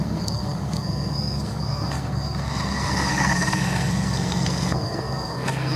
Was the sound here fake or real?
fake